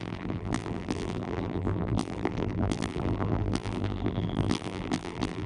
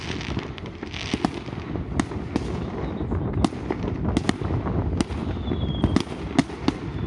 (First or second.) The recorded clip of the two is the second